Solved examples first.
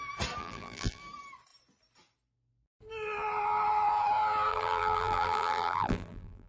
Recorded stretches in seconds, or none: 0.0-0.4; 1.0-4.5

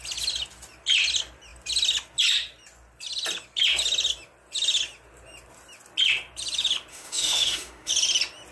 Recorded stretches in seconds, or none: 0.0-6.9; 7.9-8.5

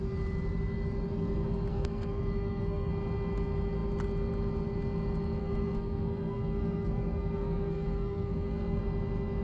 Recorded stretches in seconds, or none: 0.0-1.7; 2.9-5.4; 8.8-9.4